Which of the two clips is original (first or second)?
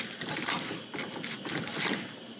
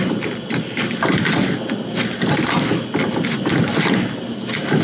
second